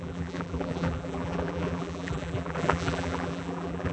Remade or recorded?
remade